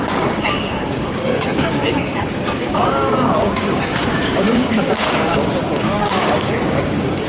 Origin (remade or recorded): remade